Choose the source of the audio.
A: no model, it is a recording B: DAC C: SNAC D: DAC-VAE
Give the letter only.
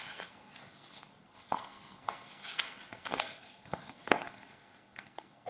C